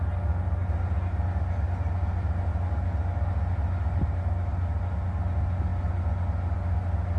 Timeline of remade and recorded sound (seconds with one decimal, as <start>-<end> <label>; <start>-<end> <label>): 0.0-7.2 recorded